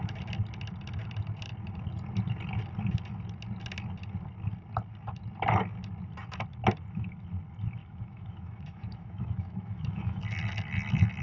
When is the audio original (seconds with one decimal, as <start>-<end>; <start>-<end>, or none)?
0.0-7.8; 10.2-11.2